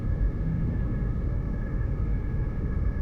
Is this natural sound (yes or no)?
no